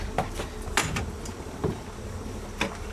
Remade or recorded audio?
recorded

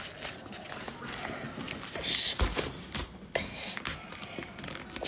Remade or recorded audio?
recorded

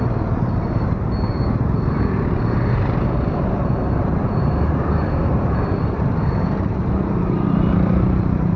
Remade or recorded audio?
remade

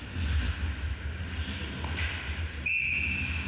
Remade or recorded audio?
recorded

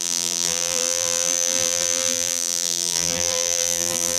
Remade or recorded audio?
remade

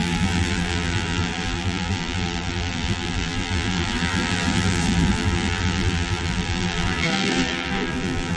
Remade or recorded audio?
remade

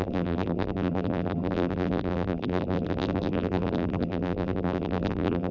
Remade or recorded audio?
remade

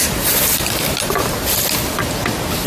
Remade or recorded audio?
recorded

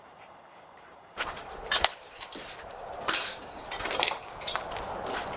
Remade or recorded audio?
remade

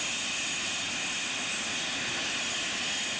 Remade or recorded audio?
recorded